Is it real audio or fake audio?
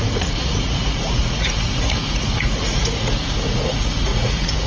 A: fake